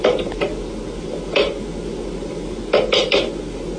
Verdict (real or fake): real